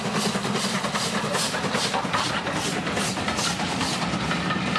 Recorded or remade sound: recorded